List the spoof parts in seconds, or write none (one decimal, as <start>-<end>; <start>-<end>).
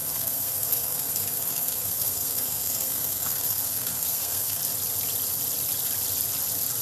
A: 0.0-4.6